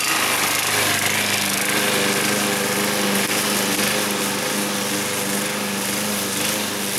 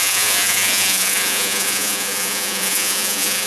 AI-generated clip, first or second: second